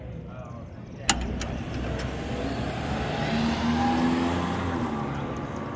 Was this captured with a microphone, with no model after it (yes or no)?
yes